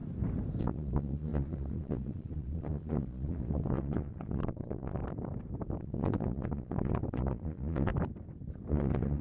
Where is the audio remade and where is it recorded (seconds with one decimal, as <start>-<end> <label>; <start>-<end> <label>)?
0.0-0.6 recorded; 0.6-5.0 remade; 5.0-5.8 recorded; 5.8-7.9 remade; 7.9-8.7 recorded; 8.7-9.2 remade